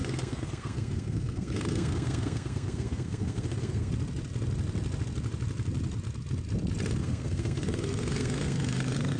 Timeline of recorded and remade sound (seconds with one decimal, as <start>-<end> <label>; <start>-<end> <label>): 0.0-3.9 remade; 3.9-7.0 recorded; 7.0-9.2 remade